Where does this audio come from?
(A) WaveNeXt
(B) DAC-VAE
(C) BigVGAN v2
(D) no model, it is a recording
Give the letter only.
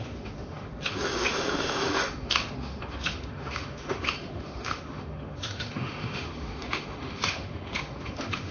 B